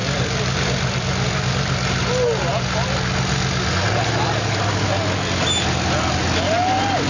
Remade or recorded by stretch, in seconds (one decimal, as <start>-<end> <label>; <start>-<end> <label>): 0.0-2.1 remade; 2.1-7.1 recorded